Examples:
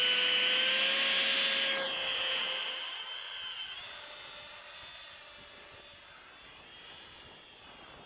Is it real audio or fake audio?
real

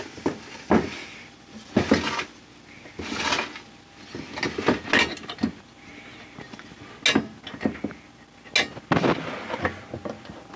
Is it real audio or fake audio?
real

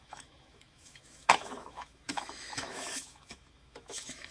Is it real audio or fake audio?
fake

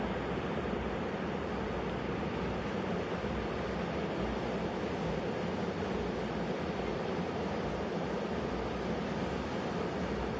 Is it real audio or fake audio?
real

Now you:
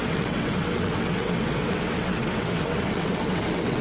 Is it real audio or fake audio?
fake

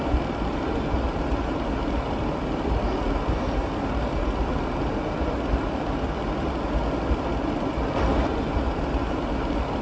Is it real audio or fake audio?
real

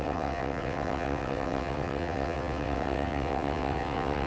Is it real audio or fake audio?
fake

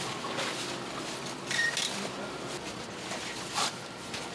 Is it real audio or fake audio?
real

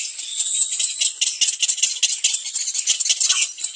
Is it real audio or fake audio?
real